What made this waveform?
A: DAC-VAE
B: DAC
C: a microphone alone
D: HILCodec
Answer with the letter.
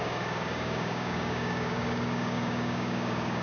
B